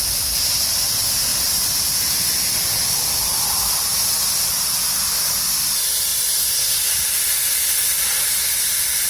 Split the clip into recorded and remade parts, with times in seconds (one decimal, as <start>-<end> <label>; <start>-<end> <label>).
0.0-9.1 recorded